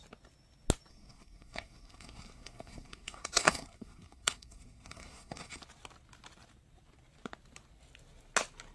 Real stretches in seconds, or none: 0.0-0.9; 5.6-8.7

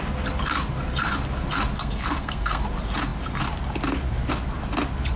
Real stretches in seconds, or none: 0.0-1.8; 2.6-5.2

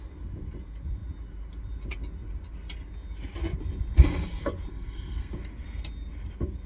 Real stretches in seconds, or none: 0.0-4.7; 5.3-6.7